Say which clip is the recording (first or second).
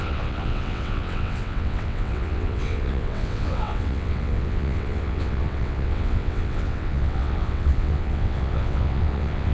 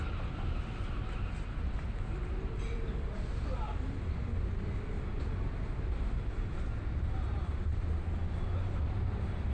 second